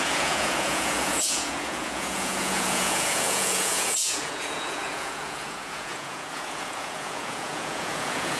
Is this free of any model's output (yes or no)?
no